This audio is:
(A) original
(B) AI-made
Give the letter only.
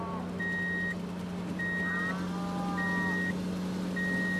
A